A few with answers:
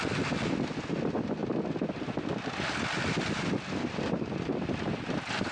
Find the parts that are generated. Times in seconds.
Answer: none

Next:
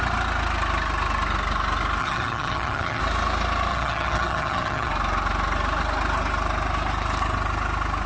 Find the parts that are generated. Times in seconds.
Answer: 2.0-3.0 (vocoder, HiFi-GAN); 3.7-4.9

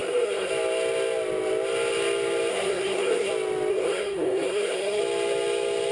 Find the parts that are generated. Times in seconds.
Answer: 0.0-0.5 (codec, SNAC); 2.5-3.3; 3.7-5.0

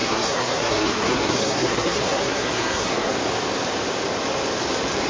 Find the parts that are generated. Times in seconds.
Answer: 0.0-3.1 (codec, SNAC)

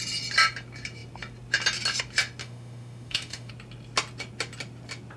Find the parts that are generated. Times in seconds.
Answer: 2.4-3.5 (autoencoder, DAC-VAE)